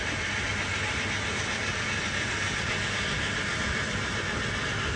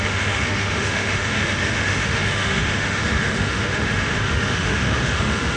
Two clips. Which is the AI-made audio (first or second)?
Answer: second